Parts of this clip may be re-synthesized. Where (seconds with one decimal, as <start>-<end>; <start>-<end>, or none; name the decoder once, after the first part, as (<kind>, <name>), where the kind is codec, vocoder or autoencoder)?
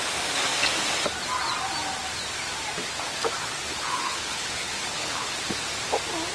3.4-5.3 (codec, HILCodec)